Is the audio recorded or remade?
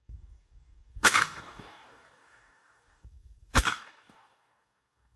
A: remade